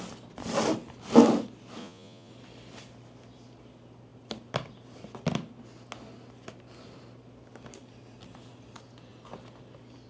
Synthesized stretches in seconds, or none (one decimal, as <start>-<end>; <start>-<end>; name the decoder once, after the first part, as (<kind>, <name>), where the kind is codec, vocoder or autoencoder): 1.8-2.3 (vocoder, Vocos)

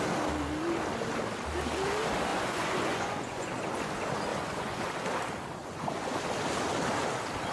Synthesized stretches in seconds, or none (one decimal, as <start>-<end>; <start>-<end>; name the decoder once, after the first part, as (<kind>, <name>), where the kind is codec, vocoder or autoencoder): 2.3-3.5 (vocoder, Vocos); 4.3-4.9; 5.6-6.2

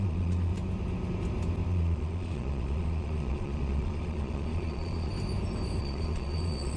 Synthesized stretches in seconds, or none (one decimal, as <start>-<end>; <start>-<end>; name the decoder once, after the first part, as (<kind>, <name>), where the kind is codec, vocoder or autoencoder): 0.0-0.5 (vocoder, Vocos); 1.7-5.1; 5.8-6.8

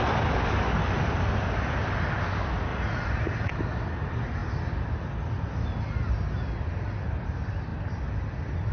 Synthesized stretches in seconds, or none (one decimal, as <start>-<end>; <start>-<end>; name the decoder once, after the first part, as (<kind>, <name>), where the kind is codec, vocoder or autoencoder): 2.7-3.5 (vocoder, Vocos)

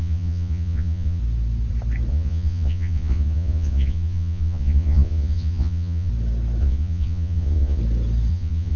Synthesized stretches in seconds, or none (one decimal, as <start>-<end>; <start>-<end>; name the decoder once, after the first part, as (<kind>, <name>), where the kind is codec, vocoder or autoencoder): 0.0-1.2 (vocoder, Vocos); 2.1-6.1; 6.6-7.8; 8.3-8.8

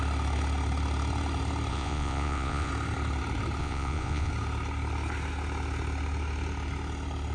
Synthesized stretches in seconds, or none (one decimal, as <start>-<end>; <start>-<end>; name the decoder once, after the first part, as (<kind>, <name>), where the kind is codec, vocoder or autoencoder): 1.7-2.7 (vocoder, Vocos); 3.6-4.3